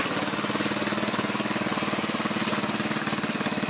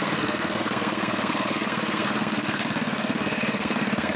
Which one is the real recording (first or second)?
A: first